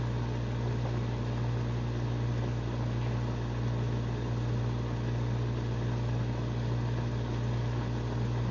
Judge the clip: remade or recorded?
recorded